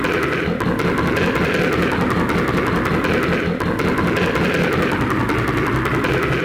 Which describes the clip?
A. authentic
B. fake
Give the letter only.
A